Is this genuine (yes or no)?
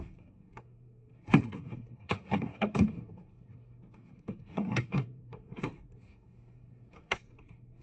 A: no